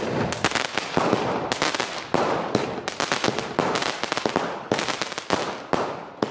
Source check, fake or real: real